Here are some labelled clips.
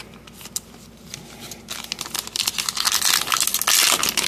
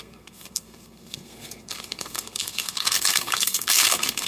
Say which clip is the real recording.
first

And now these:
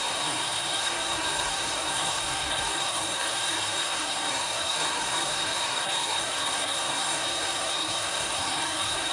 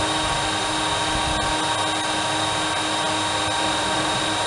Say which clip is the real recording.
second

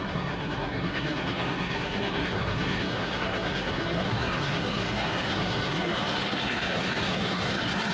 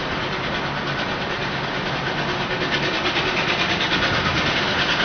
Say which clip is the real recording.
second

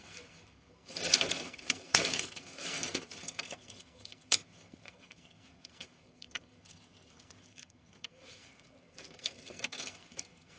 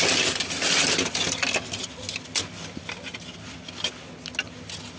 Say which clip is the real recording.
second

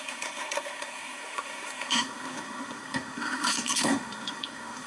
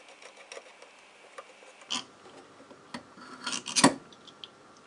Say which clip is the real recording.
second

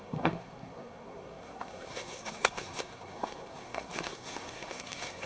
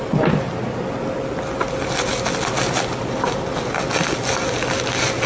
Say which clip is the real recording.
second